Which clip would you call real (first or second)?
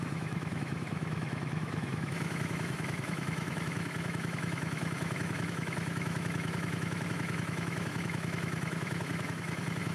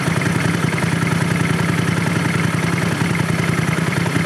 second